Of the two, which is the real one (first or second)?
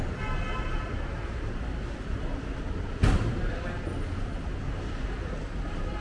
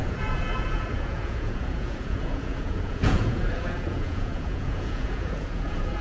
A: first